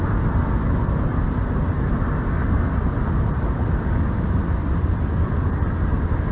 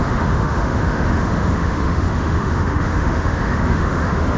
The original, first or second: first